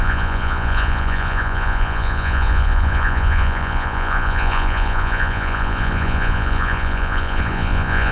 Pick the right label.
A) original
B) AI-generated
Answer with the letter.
B